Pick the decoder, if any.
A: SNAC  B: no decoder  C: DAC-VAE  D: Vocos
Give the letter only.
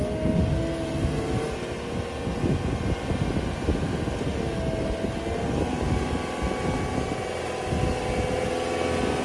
B